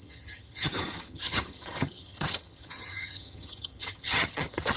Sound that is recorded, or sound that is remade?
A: remade